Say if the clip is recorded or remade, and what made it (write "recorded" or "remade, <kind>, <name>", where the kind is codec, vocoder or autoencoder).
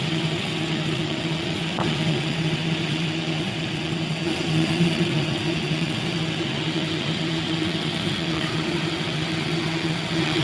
remade, vocoder, WaveNeXt